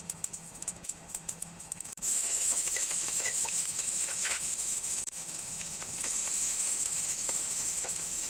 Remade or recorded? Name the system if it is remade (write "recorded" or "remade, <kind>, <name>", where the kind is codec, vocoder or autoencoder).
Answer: remade, autoencoder, DAC-VAE